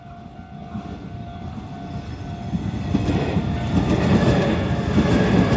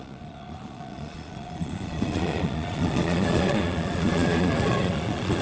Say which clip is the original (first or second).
first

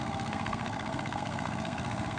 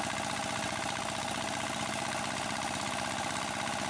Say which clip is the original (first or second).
second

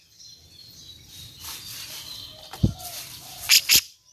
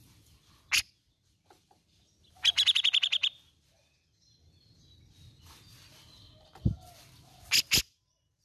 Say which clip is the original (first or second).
second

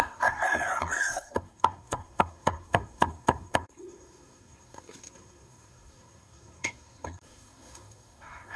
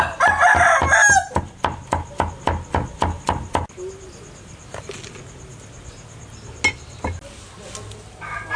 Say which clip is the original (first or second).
second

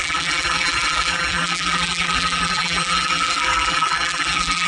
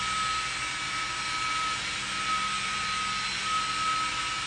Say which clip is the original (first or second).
second